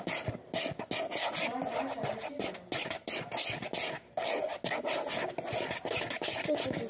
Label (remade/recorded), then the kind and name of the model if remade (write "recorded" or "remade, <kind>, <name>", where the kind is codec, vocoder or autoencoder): recorded